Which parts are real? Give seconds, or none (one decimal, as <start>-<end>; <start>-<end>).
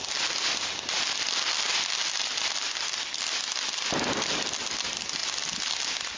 0.0-6.2